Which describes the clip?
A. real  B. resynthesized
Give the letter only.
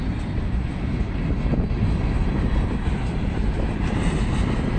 A